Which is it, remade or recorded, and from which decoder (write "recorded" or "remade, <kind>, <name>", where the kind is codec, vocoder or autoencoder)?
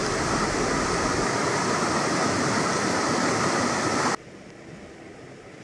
recorded